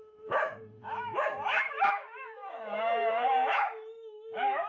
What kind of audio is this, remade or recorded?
remade